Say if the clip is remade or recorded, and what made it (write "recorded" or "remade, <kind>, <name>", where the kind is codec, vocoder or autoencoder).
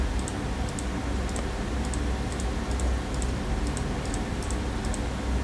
recorded